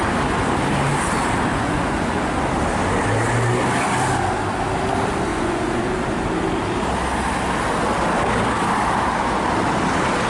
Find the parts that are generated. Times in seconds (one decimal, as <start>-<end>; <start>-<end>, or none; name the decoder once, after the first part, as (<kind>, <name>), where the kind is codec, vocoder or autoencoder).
1.5-2.5 (vocoder, Vocos); 5.3-5.8

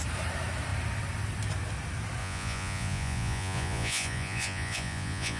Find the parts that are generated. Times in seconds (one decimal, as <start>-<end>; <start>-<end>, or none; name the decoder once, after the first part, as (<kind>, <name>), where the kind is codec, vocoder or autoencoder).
2.2-5.4 (vocoder, Vocos)

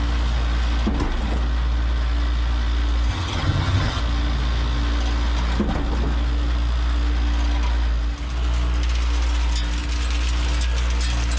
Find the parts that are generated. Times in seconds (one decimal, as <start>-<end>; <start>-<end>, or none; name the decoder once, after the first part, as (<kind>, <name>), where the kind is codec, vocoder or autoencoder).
3.1-4.0 (vocoder, HiFi-GAN)

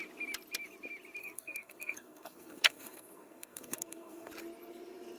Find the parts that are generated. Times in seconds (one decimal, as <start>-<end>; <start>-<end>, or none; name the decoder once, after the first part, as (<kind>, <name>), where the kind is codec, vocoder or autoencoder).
1.2-4.3 (codec, SNAC)

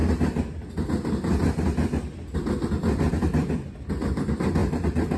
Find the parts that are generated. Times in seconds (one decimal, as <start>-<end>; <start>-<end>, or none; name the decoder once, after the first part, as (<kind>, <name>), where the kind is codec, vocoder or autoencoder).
none

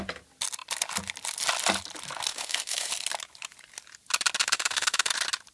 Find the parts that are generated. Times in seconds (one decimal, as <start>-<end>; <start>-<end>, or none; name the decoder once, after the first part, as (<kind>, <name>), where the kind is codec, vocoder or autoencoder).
2.3-2.9 (autoencoder, DAC-VAE); 4.4-5.1

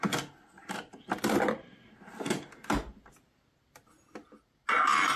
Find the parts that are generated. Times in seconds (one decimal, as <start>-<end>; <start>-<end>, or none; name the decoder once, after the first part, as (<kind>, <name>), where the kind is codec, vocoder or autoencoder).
none

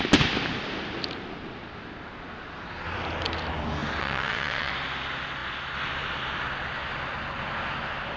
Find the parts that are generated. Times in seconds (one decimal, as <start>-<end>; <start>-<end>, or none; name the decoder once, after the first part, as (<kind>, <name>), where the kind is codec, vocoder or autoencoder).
4.0-4.7 (vocoder, WaveNeXt)